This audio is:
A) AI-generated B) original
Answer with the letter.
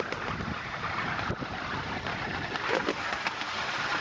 B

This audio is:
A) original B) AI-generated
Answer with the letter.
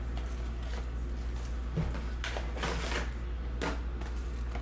A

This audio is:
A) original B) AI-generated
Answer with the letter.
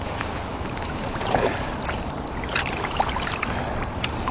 B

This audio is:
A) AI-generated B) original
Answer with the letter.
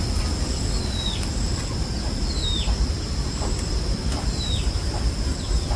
B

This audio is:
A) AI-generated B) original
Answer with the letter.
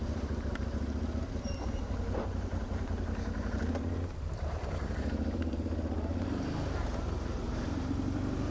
A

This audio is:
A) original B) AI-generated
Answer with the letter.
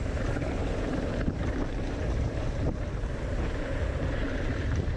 B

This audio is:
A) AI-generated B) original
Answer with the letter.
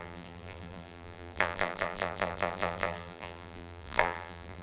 A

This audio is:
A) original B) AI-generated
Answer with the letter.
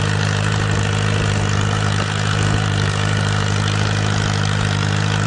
A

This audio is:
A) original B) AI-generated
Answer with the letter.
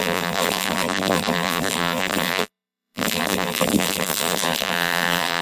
B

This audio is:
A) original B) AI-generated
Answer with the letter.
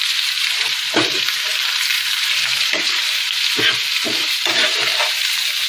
B